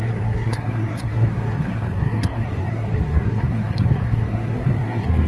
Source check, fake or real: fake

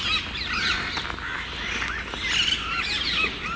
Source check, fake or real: real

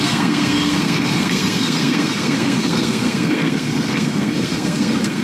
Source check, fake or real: fake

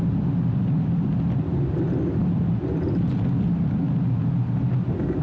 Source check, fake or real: real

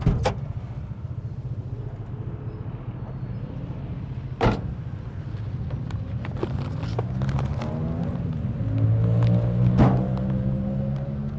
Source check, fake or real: real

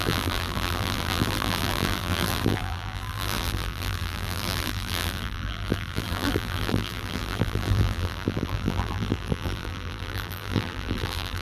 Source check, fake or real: fake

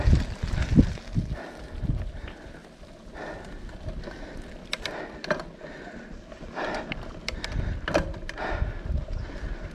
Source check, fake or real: real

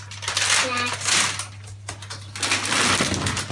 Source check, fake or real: real